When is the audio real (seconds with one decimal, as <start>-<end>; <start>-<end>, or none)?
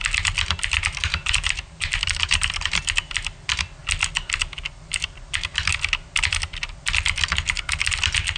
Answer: 0.0-1.0; 2.8-8.4